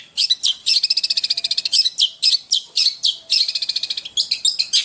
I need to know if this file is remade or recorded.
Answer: recorded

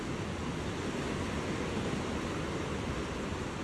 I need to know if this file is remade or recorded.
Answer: recorded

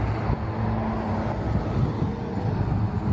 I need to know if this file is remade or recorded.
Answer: recorded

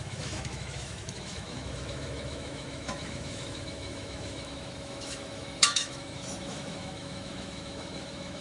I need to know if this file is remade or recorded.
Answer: remade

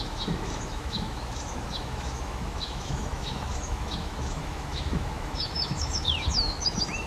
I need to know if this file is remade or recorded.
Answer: remade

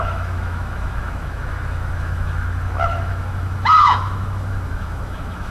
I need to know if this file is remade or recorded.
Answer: remade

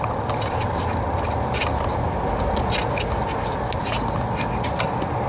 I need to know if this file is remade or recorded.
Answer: recorded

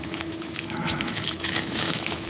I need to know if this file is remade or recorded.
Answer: remade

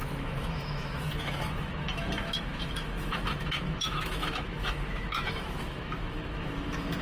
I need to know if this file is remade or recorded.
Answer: remade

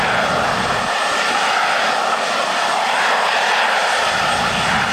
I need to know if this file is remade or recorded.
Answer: recorded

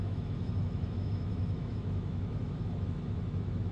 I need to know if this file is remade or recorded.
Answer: remade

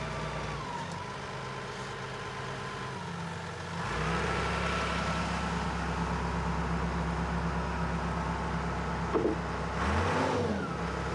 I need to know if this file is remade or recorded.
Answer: recorded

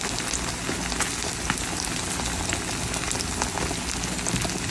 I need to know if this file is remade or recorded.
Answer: recorded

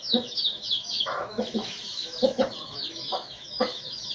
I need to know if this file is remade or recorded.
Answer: remade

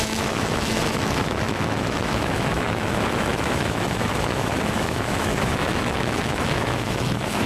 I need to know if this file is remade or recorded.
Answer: remade